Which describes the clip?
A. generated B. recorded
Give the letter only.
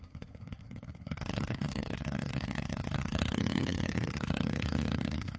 A